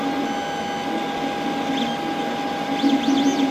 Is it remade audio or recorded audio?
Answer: recorded